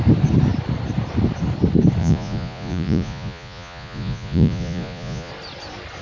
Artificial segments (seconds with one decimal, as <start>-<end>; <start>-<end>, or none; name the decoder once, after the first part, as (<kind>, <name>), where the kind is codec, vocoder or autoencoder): 2.0-5.3 (vocoder, Vocos)